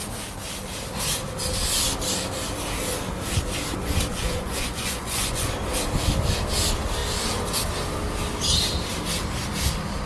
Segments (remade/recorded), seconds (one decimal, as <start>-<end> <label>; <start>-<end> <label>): 0.0-4.1 recorded; 4.1-5.5 remade; 5.5-10.1 recorded